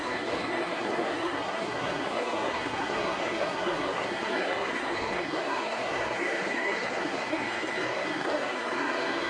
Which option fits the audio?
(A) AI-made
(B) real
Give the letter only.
A